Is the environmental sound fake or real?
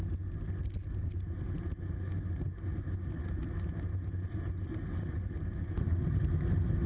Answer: real